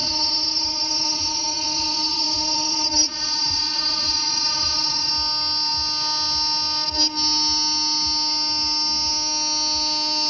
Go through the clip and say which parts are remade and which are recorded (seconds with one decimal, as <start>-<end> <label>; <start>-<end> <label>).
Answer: 0.0-5.1 remade; 5.1-10.3 recorded